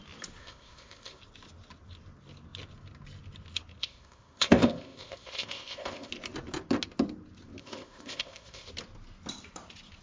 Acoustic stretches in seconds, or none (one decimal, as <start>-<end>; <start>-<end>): 0.0-0.4; 1.2-3.8; 6.1-7.6; 8.7-10.0